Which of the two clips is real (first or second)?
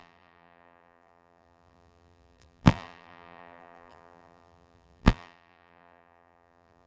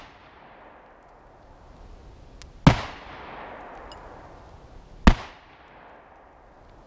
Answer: second